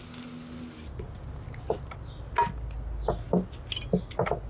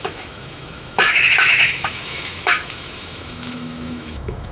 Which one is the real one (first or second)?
first